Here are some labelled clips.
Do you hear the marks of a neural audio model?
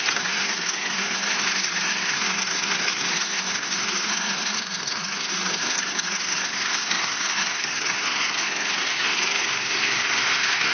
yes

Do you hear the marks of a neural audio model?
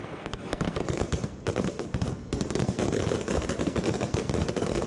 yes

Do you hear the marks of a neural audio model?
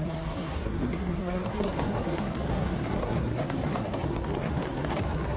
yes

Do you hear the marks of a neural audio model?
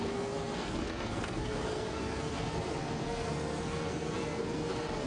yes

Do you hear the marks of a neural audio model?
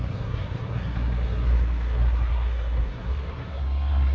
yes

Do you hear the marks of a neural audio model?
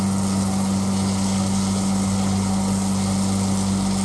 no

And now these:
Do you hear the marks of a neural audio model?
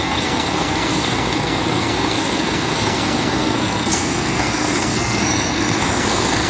yes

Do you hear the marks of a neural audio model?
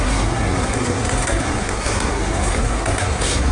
yes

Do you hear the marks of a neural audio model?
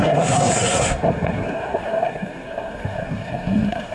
yes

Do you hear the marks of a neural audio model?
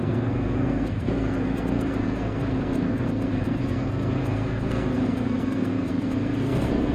yes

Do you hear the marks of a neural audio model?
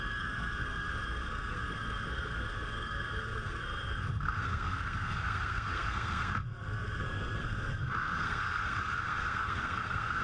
yes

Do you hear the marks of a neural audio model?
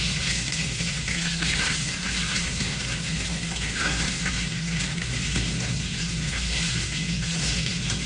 yes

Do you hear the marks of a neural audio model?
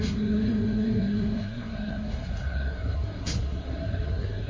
yes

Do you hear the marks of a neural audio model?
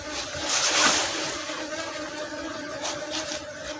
no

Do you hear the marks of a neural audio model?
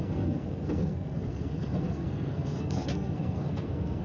yes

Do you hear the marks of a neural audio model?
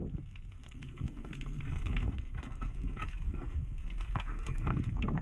yes